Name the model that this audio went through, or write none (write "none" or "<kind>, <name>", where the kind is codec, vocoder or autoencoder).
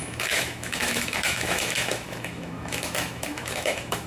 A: autoencoder, DAC-VAE